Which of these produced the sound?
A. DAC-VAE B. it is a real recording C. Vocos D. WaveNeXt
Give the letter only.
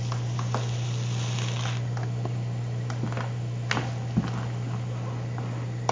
B